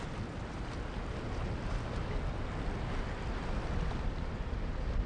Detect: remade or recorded recorded